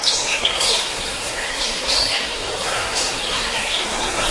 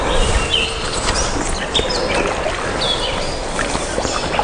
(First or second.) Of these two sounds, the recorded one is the second